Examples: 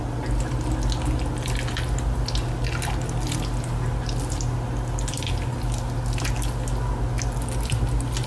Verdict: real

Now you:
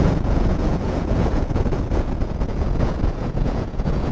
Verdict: fake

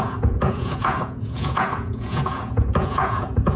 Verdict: fake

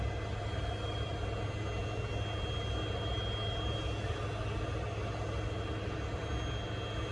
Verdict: real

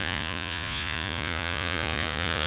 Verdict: fake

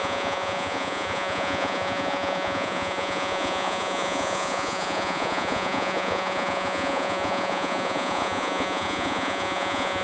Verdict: fake